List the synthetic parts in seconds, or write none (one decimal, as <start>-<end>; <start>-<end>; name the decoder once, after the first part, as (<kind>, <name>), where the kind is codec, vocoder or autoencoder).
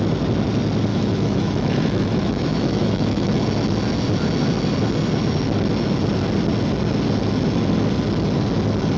0.9-3.4 (autoencoder, DAC-VAE)